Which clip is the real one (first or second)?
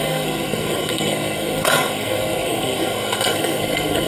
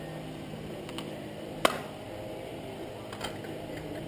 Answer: second